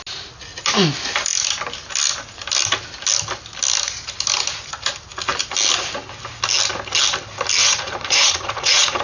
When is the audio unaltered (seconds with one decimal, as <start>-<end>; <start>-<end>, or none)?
0.0-7.6